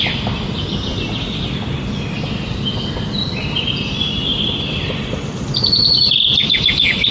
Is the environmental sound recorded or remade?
recorded